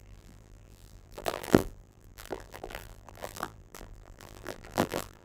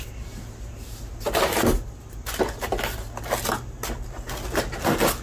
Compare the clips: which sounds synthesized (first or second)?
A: first